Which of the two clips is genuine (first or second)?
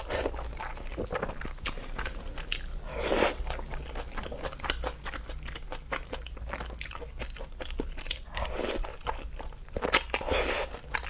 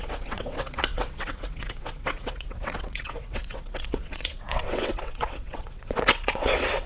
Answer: first